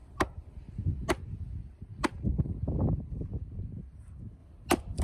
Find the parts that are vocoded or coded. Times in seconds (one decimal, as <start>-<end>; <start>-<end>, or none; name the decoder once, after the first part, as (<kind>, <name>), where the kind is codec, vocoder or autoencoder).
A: 4.4-5.0 (vocoder, BigVGAN v2)